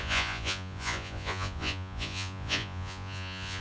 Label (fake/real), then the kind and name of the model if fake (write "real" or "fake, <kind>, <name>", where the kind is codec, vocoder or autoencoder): fake, vocoder, Vocos